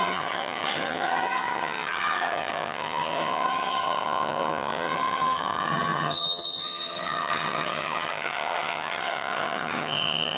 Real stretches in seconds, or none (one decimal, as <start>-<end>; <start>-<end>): none